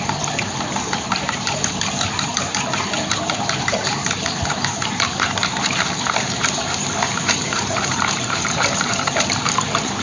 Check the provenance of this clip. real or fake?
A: fake